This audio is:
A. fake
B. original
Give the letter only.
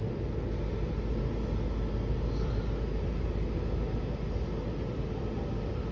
B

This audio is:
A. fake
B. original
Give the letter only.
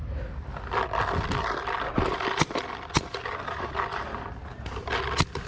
B